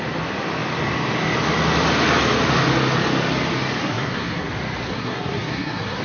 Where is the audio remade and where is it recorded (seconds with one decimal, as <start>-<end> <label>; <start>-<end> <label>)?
0.0-3.8 recorded; 3.8-4.5 remade; 4.5-4.9 recorded; 4.9-6.0 remade

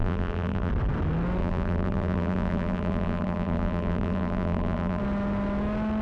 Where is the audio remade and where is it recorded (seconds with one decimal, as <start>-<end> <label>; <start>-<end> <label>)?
0.0-0.7 remade; 0.7-1.4 recorded; 1.4-5.0 remade; 5.0-6.0 recorded

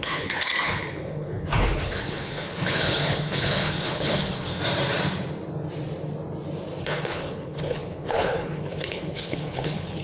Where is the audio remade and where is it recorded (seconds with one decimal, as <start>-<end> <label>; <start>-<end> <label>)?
0.0-4.6 remade; 4.6-6.8 recorded; 6.8-10.0 remade